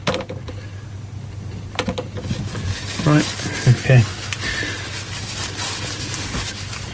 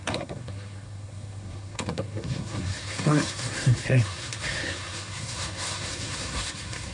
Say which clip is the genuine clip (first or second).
first